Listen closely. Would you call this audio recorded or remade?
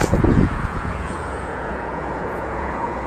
remade